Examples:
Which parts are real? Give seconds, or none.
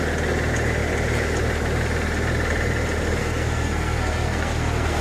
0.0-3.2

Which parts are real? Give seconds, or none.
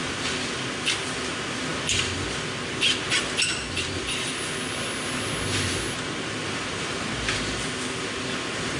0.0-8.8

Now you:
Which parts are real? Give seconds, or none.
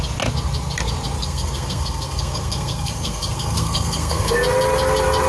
0.0-1.2; 4.3-5.3